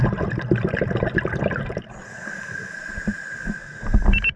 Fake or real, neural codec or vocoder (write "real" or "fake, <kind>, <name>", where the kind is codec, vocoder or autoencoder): real